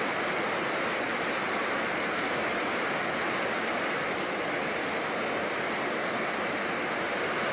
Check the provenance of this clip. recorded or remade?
recorded